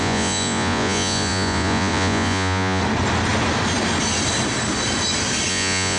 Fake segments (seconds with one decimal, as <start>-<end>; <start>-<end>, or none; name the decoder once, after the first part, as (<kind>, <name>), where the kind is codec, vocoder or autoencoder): 0.0-2.8 (vocoder, Vocos); 5.5-6.0